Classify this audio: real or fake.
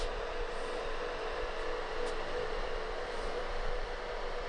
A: fake